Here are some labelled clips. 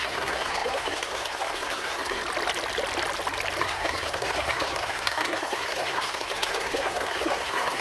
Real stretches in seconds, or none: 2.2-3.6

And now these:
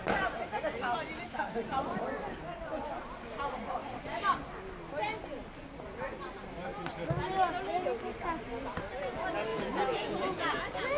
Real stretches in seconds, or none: 0.0-9.5

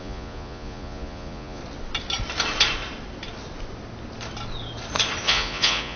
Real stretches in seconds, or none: 1.6-5.2